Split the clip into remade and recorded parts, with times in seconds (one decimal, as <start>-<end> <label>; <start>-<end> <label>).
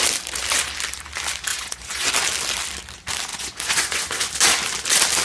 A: 0.0-1.5 recorded; 1.5-2.1 remade; 2.1-3.3 recorded; 3.3-4.3 remade; 4.3-5.2 recorded